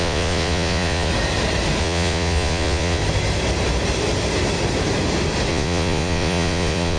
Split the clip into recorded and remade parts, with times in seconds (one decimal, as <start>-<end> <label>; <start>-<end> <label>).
0.0-1.1 remade; 1.1-1.8 recorded; 1.8-3.0 remade; 3.0-5.5 recorded; 5.5-7.0 remade